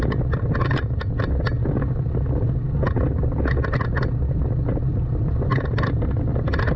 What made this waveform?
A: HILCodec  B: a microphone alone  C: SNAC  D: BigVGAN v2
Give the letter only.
B